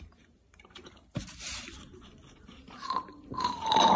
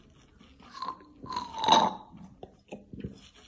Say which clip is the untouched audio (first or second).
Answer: second